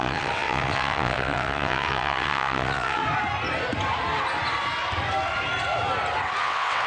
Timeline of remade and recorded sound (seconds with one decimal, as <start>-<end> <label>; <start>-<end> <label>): 0.0-3.0 remade; 3.0-6.4 recorded; 6.4-6.9 remade